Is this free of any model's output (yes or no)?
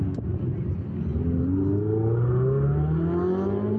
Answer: yes